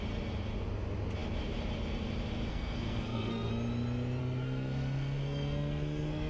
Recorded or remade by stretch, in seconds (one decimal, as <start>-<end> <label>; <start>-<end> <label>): 0.0-2.5 recorded; 2.5-3.5 remade; 3.5-4.2 recorded; 4.2-6.3 remade